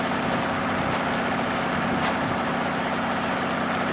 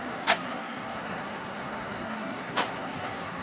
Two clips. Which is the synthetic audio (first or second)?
second